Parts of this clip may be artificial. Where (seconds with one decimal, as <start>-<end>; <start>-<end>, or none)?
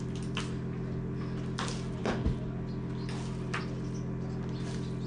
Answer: none